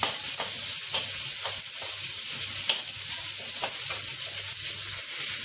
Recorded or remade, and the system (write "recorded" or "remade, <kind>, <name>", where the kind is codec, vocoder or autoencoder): recorded